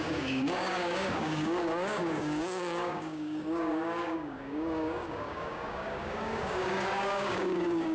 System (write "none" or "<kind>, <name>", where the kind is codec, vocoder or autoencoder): codec, DAC